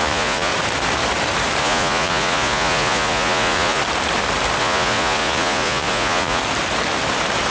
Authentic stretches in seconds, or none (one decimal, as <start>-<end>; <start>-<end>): 0.5-1.6; 3.8-4.6; 6.4-7.5